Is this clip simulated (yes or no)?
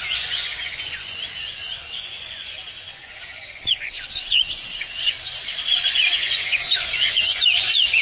yes